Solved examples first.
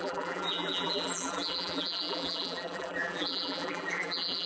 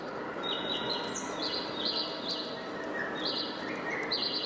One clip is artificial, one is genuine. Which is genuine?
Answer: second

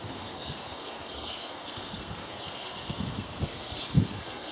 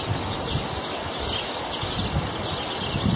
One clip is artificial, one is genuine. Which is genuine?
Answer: second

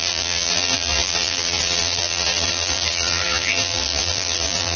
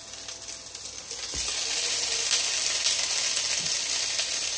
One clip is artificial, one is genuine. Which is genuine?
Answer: second